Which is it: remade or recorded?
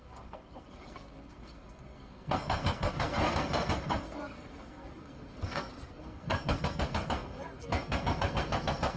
remade